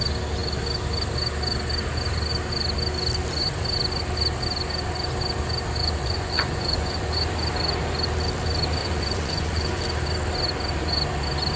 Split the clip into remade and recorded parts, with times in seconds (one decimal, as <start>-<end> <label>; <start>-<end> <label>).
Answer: 0.0-5.8 recorded; 5.8-7.1 remade; 7.1-8.8 recorded; 8.8-9.8 remade; 9.8-11.6 recorded